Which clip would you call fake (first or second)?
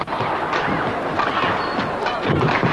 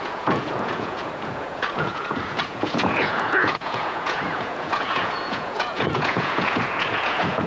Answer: second